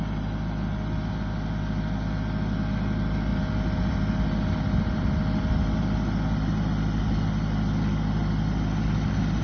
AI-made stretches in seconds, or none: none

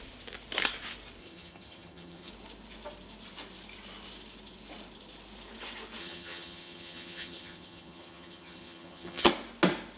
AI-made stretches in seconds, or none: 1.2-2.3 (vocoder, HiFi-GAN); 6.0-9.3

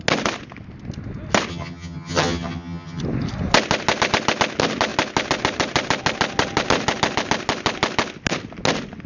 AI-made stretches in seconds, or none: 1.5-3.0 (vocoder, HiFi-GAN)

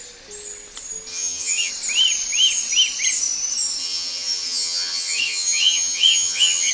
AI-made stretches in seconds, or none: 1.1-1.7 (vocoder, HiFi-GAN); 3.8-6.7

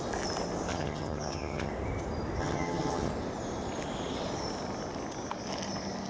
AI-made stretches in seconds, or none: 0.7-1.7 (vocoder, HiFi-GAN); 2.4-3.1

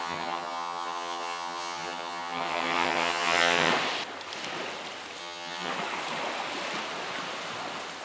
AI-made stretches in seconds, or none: 0.0-3.7 (vocoder, HiFi-GAN); 5.2-5.7